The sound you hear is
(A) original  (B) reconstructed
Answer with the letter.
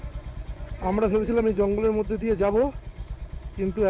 B